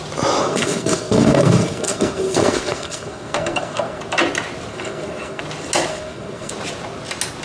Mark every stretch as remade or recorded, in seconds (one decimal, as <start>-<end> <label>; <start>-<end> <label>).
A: 0.0-0.4 recorded; 0.4-4.0 remade; 4.0-4.7 recorded; 4.7-5.4 remade; 5.4-5.9 recorded; 5.9-6.5 remade; 6.5-7.4 recorded